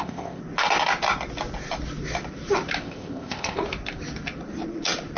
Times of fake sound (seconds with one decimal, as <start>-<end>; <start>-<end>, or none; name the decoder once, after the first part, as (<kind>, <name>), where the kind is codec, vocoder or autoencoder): 0.0-0.4 (codec, ZipCodec); 2.8-3.6